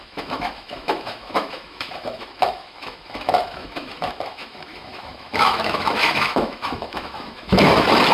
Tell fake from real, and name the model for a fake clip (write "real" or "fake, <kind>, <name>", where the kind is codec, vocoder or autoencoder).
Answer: fake, autoencoder, DAC-VAE